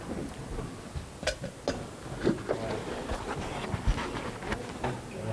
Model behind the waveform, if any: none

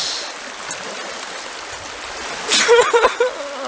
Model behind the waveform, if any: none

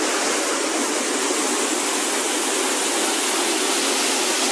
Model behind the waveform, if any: none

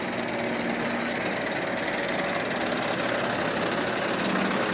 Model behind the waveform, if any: none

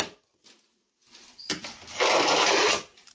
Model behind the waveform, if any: none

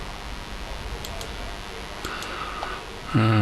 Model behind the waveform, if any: none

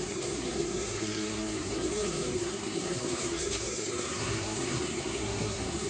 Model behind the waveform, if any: codec, SNAC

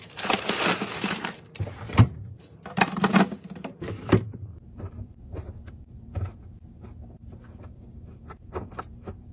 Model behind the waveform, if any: vocoder, BigVGAN v2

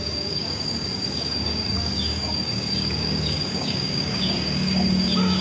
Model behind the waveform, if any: codec, DAC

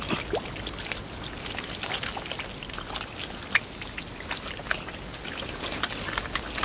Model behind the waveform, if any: none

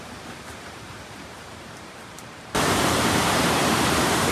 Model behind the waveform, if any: vocoder, BigVGAN v2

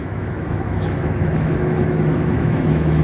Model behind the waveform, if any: autoencoder, DAC-VAE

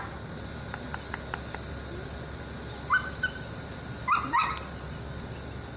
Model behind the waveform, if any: none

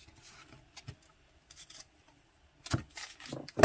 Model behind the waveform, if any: none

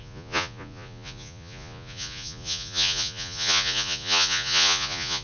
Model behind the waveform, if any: vocoder, Vocos